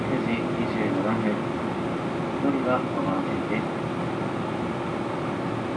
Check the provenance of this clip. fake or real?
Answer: real